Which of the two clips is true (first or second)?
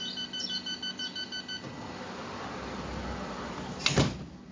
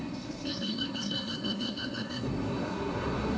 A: first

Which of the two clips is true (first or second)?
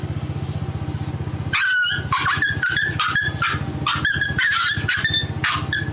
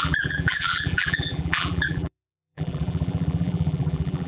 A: first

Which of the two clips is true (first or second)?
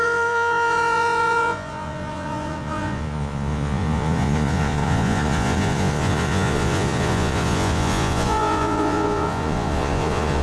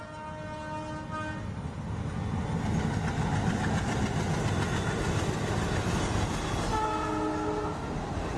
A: second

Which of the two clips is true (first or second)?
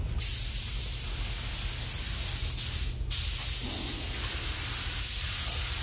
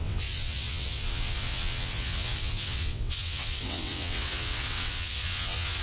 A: first